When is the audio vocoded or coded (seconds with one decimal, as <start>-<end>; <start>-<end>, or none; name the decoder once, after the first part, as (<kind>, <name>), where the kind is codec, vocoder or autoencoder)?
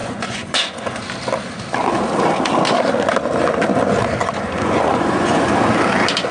0.0-1.0 (vocoder, Vocos); 4.2-5.5